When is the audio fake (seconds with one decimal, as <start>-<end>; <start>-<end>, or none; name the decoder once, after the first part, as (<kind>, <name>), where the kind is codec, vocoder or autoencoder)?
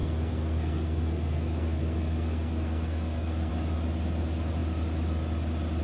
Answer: 0.0-3.5 (codec, SNAC)